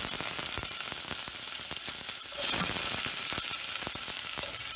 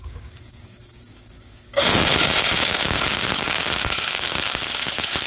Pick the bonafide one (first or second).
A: first